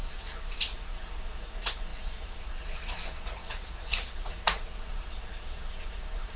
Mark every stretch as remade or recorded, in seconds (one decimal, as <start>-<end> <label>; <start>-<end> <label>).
0.0-6.4 remade